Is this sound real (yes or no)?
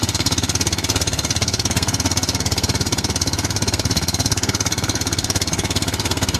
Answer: no